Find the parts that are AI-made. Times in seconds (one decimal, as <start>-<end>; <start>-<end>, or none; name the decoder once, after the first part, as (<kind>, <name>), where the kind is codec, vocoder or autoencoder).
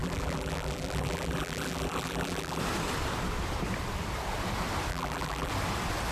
0.0-2.6 (vocoder, BigVGAN v2); 4.9-5.5